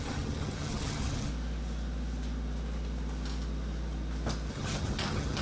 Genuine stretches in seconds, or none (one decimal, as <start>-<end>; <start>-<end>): 1.3-4.5